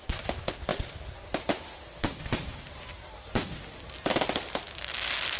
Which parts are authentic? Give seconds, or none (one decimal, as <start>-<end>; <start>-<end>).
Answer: 0.0-5.4